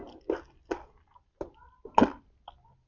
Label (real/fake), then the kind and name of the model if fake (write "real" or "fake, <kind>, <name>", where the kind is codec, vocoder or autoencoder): real